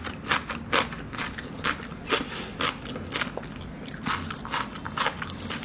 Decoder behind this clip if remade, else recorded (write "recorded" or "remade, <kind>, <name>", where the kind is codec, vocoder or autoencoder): recorded